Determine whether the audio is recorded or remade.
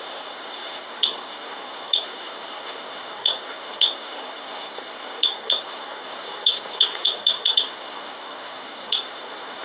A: remade